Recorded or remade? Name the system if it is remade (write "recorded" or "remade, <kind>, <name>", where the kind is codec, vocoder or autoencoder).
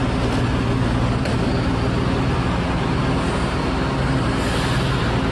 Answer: recorded